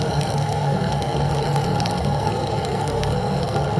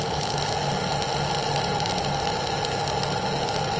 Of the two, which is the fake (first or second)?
first